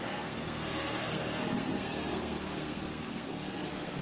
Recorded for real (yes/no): no